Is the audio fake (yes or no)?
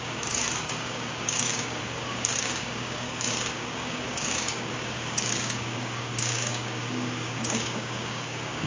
yes